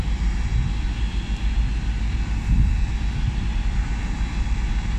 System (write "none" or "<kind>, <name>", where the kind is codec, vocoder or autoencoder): none